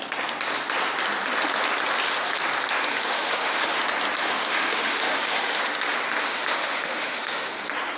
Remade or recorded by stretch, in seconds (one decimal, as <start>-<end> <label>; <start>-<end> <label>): 0.0-2.9 recorded; 2.9-3.8 remade; 3.8-4.2 recorded; 4.2-5.6 remade; 5.6-6.2 recorded; 6.2-7.6 remade; 7.6-8.0 recorded